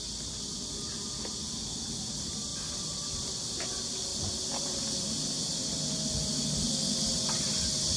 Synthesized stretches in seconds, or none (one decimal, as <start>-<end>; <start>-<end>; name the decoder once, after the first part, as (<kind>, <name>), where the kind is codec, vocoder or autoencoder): 2.5-3.3 (vocoder, BigVGAN v2); 4.1-6.4